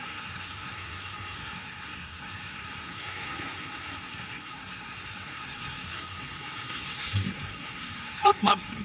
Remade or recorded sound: remade